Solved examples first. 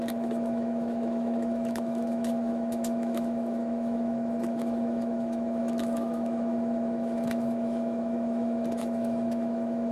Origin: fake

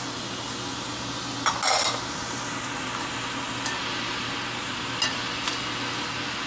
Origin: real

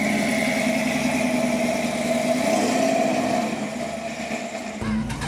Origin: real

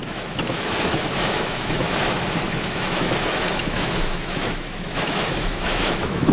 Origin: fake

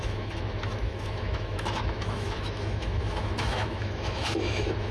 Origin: fake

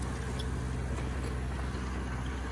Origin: real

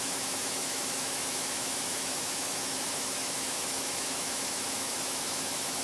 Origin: fake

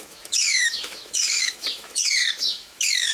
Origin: fake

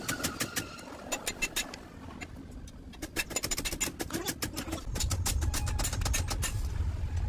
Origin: real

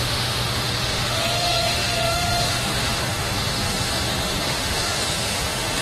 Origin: fake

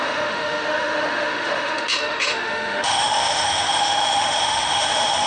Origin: fake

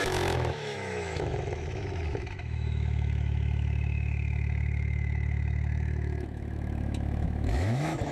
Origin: fake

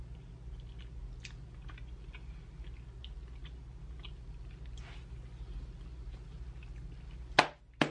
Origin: real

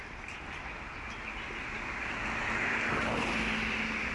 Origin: real